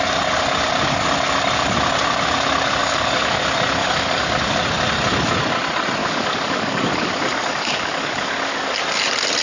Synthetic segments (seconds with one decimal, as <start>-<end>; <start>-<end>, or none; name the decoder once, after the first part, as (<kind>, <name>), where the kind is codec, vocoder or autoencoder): 2.8-3.4 (codec, DAC); 3.8-4.3; 6.0-8.7